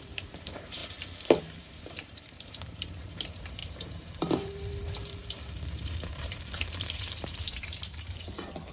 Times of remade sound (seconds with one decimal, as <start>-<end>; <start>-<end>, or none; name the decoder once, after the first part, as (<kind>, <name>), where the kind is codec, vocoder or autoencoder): 0.0-0.8 (vocoder, BigVGAN v2); 1.6-8.7